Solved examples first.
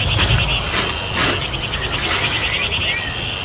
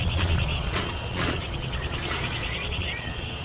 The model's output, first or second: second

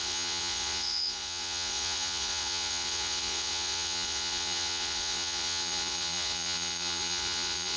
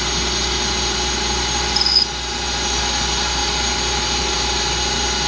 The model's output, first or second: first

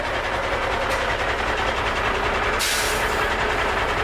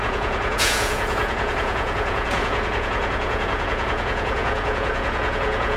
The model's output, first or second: second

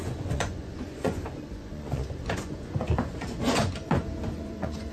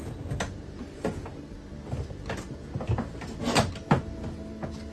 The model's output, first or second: first